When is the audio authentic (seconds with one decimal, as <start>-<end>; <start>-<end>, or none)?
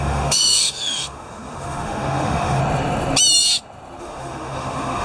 2.6-4.0